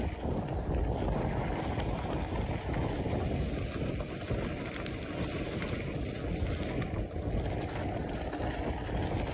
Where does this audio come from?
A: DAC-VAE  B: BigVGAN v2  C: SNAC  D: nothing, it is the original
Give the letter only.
D